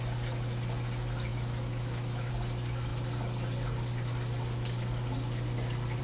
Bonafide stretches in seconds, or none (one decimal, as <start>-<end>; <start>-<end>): 0.0-1.3; 2.3-6.0